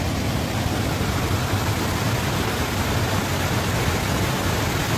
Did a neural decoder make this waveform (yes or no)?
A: no